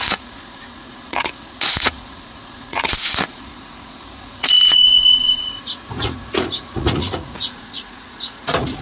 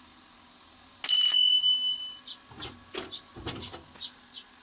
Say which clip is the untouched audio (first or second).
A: second